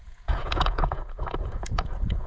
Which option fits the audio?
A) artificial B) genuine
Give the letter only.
A